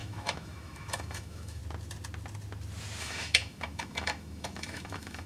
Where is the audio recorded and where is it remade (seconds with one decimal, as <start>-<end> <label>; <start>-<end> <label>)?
0.0-1.6 remade; 1.6-3.0 recorded; 3.0-5.3 remade